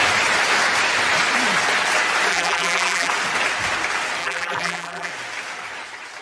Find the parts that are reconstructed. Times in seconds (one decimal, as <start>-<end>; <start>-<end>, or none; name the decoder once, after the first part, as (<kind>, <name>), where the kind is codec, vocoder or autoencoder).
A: 2.3-3.1 (vocoder, BigVGAN v2); 4.2-5.1